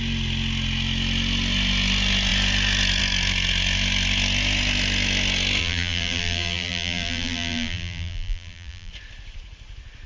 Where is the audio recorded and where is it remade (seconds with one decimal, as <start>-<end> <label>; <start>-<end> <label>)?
0.0-5.6 recorded; 5.6-8.9 remade; 8.9-10.1 recorded